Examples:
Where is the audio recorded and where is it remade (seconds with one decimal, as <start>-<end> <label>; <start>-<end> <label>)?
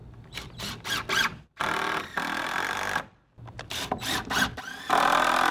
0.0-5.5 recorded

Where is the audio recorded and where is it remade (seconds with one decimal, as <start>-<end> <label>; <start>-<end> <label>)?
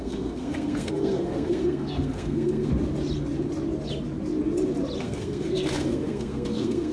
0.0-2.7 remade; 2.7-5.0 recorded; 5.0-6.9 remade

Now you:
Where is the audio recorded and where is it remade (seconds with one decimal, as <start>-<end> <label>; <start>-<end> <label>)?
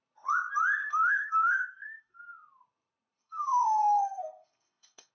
0.0-0.8 recorded; 0.8-2.2 remade; 2.2-3.2 recorded; 3.2-5.1 remade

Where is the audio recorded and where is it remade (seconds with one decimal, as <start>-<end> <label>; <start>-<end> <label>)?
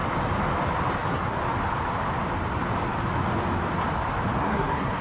0.0-1.0 recorded; 1.0-1.4 remade; 1.4-4.4 recorded; 4.4-5.0 remade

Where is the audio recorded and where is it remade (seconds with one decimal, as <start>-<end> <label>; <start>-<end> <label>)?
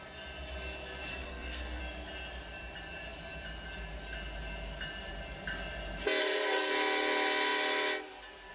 0.0-1.1 recorded; 1.1-1.8 remade; 1.8-6.2 recorded; 6.2-6.7 remade; 6.7-8.5 recorded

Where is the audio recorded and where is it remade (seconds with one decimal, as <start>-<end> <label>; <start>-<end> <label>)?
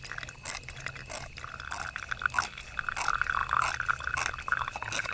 0.0-5.1 recorded